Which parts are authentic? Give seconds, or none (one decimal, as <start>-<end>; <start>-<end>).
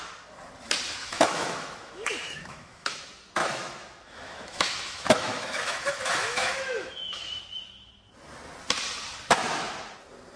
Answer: 0.0-1.0; 3.0-3.4; 7.4-10.4